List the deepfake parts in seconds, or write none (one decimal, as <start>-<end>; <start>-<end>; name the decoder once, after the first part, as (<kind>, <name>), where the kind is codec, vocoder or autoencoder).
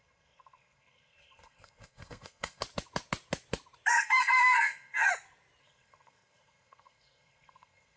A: 0.0-2.6 (codec, SNAC); 3.9-5.1; 5.6-8.0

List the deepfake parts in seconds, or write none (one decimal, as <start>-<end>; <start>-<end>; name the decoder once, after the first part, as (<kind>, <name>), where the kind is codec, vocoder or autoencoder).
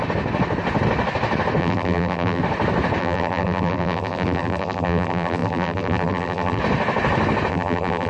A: 1.6-2.4 (vocoder, BigVGAN v2); 3.0-6.6; 7.5-8.1